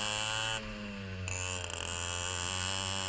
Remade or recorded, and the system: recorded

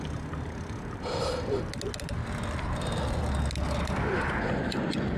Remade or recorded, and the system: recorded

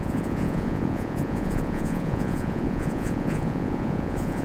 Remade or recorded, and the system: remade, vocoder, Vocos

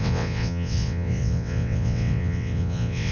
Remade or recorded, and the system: remade, vocoder, WaveNeXt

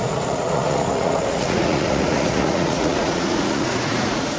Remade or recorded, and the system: remade, vocoder, Vocos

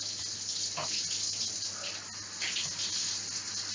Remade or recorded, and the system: recorded